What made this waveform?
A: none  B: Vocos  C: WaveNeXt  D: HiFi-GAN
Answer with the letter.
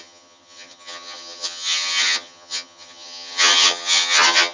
D